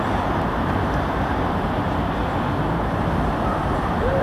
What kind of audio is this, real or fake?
fake